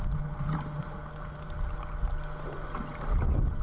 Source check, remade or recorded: recorded